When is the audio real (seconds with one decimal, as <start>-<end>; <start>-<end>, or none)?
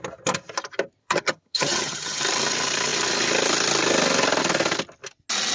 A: 0.0-1.0; 2.2-5.5